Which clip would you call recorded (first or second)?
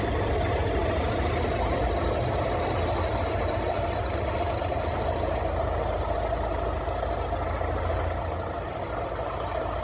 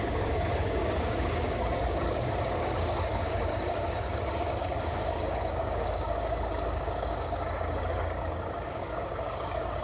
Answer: first